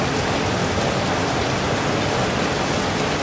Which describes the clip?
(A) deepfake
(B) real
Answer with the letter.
B